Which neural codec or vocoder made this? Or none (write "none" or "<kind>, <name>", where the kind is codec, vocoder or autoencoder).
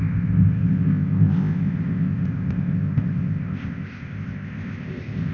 codec, ZipCodec